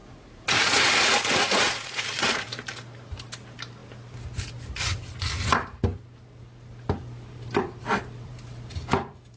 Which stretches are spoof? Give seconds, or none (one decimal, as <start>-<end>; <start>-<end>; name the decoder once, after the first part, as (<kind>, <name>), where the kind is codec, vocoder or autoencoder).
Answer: 0.0-2.5 (vocoder, Vocos)